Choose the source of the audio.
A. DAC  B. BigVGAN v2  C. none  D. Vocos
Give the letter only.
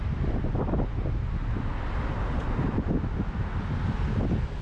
C